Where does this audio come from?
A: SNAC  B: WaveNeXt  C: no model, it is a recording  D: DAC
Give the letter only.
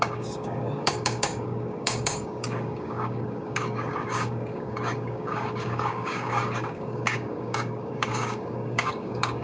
D